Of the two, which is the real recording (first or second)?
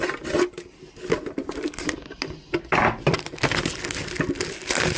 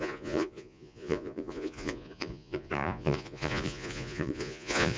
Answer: first